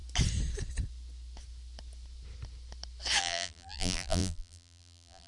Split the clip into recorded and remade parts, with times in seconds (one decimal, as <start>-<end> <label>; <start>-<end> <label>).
0.0-3.2 recorded; 3.2-5.3 remade